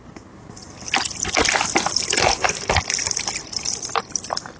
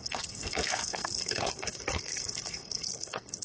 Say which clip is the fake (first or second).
second